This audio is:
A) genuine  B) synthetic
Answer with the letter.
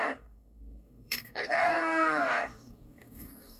B